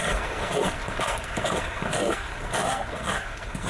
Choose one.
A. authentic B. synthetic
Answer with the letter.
B